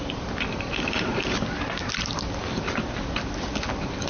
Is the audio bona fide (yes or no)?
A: yes